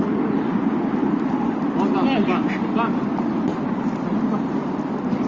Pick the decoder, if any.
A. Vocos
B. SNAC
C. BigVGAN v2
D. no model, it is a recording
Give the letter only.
D